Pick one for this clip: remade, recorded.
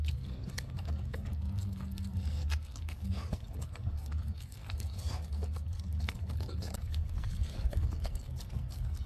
remade